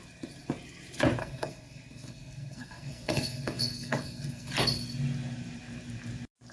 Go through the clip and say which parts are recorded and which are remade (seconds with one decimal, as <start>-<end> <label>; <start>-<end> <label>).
0.0-1.2 recorded; 1.2-4.5 remade; 4.5-6.5 recorded